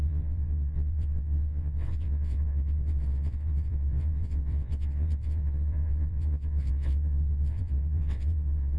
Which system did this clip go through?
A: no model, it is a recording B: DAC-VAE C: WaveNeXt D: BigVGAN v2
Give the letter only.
C